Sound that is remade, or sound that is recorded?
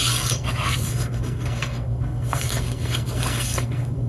remade